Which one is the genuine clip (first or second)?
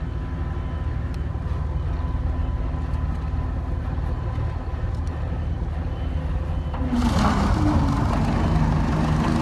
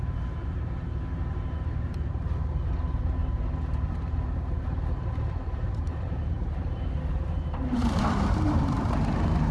first